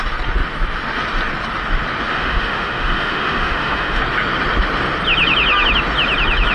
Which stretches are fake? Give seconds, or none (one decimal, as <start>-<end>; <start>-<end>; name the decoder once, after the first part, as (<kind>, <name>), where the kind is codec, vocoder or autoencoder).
2.1-4.0 (autoencoder, DAC-VAE)